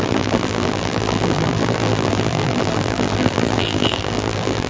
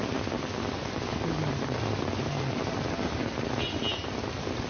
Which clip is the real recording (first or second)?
second